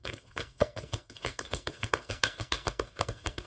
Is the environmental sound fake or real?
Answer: fake